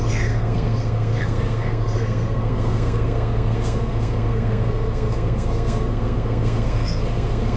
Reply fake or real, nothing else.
fake